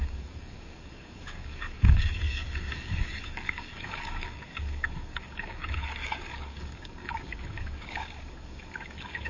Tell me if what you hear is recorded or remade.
remade